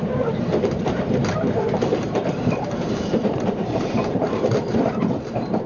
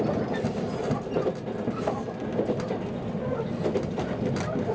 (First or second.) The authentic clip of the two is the second